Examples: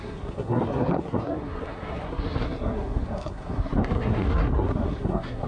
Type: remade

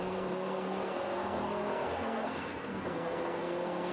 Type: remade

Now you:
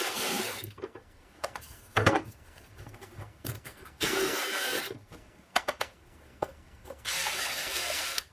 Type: remade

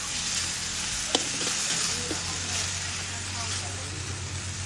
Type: recorded